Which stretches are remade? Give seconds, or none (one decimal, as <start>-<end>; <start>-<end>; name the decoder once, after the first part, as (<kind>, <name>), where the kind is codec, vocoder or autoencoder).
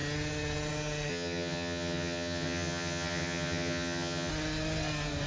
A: 1.1-4.3 (vocoder, HiFi-GAN)